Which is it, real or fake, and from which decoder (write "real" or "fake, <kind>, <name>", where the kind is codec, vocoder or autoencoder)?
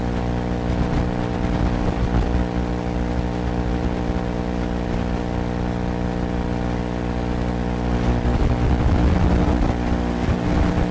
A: real